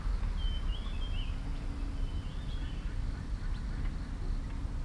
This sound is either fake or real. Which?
real